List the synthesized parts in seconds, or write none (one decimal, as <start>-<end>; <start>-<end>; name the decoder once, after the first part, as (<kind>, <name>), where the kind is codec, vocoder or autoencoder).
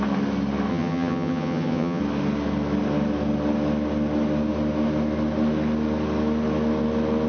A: 0.7-2.0 (vocoder, HiFi-GAN)